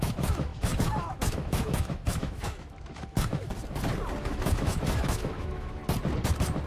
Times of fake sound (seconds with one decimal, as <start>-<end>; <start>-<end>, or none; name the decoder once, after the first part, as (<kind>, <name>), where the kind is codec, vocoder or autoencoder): 0.0-3.5 (autoencoder, DAC-VAE); 4.2-5.8